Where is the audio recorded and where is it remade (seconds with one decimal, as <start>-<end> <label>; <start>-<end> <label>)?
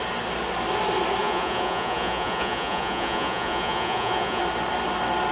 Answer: 0.0-1.2 recorded; 1.2-4.4 remade; 4.4-5.3 recorded